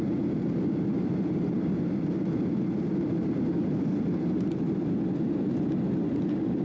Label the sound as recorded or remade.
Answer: recorded